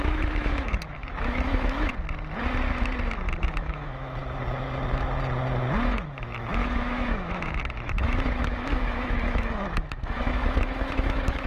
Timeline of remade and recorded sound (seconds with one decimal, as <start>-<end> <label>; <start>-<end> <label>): 0.0-1.9 remade; 1.9-3.4 recorded; 3.4-4.2 remade; 4.2-5.9 recorded; 5.9-11.5 remade